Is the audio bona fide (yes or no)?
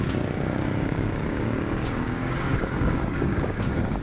no